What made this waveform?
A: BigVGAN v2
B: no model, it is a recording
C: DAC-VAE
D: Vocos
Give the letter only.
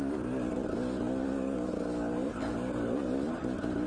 B